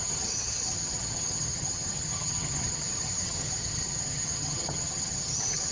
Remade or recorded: remade